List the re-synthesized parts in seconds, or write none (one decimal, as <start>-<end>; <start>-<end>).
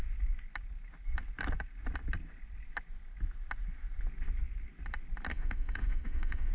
5.3-6.5